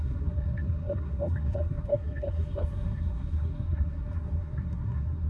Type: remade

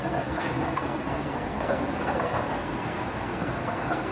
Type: remade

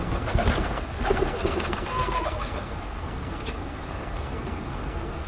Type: remade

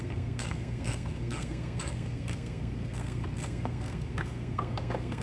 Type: remade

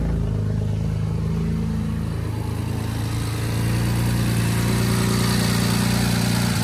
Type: recorded